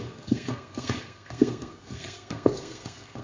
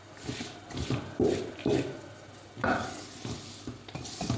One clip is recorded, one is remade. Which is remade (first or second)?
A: first